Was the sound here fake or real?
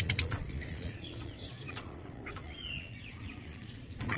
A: fake